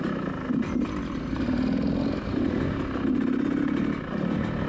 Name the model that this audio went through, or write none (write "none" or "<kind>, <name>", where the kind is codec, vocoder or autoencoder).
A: none